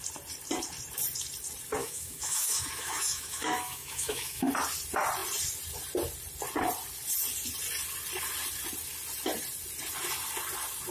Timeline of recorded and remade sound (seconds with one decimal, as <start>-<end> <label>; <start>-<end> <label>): 0.0-1.8 recorded; 1.8-4.5 remade; 4.5-10.9 recorded